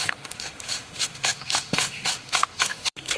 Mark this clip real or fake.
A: fake